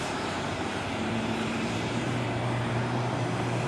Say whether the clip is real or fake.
fake